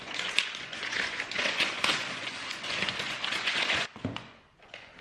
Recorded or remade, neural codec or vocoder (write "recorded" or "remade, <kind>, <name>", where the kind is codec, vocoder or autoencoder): remade, vocoder, Vocos